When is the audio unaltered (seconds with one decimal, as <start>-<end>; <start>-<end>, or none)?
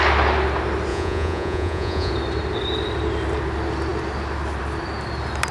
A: 0.0-0.9; 2.1-5.5